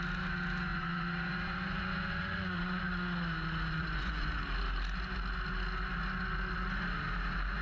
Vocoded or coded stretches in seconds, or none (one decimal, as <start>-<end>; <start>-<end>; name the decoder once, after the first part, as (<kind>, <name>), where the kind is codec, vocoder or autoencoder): 0.7-2.8 (vocoder, Vocos); 3.8-4.3